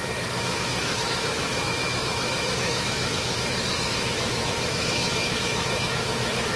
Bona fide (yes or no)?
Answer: no